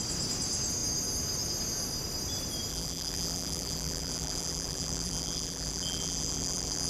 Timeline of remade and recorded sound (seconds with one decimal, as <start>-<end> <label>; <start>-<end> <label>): 0.0-2.7 recorded; 2.7-6.9 remade